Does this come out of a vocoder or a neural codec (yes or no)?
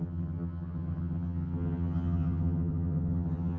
yes